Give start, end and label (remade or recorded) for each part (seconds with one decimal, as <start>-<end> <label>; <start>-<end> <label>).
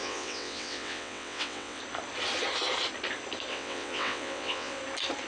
0.0-1.8 remade; 1.8-3.5 recorded; 3.5-4.8 remade; 4.8-5.3 recorded